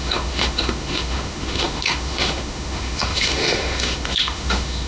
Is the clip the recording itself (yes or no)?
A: no